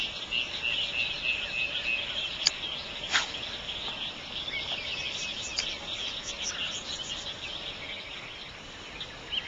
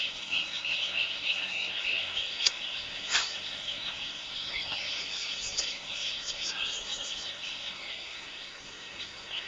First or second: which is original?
first